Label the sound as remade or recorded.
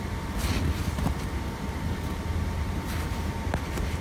recorded